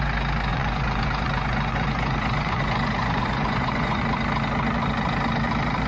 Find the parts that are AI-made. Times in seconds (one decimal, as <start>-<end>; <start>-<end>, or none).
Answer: 0.5-4.0